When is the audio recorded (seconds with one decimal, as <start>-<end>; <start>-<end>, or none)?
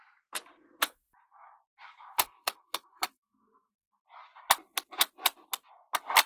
0.0-0.8; 3.9-6.3